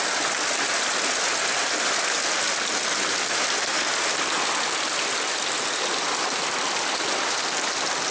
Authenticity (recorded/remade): recorded